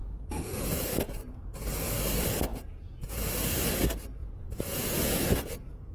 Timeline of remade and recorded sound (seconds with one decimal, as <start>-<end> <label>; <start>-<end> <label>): 0.0-0.8 remade; 0.8-2.5 recorded; 2.5-3.3 remade; 3.3-4.2 recorded; 4.2-5.9 remade